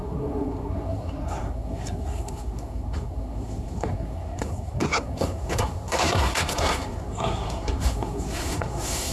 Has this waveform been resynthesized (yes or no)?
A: yes